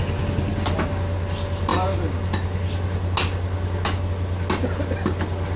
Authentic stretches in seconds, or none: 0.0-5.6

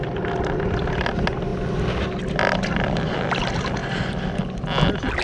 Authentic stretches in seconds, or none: 0.0-5.2